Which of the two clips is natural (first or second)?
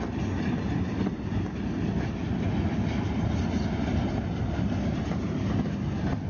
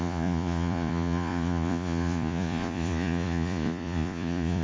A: first